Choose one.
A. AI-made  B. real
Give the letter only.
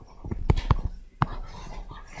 B